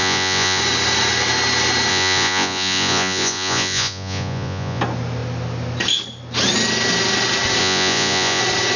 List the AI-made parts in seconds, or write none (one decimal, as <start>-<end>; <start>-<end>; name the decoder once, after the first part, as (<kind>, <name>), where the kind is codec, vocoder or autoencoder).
0.0-0.6 (vocoder, Vocos); 1.9-4.8; 7.6-8.4